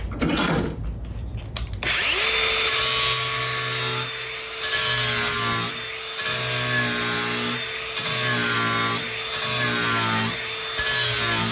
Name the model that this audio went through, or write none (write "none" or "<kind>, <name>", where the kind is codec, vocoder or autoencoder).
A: none